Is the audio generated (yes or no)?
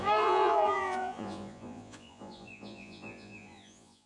yes